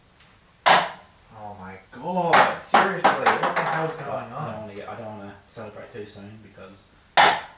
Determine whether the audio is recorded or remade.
recorded